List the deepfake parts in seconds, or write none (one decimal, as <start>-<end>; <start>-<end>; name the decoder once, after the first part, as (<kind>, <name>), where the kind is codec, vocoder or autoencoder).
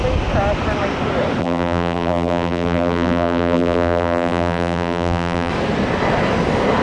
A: 1.4-5.5 (vocoder, BigVGAN v2)